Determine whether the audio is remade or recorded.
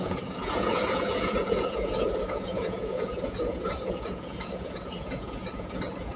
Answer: remade